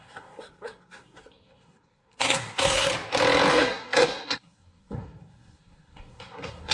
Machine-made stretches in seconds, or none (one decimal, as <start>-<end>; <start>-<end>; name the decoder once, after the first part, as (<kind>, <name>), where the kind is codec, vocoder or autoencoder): 0.0-2.9 (codec, SNAC); 3.5-6.7